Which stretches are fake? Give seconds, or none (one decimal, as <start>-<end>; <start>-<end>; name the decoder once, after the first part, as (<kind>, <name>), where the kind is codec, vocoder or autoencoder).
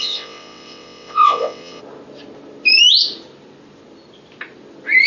0.0-1.8 (vocoder, WaveNeXt)